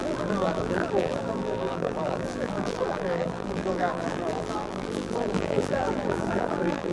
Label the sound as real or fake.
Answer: fake